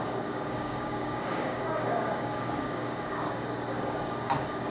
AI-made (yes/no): yes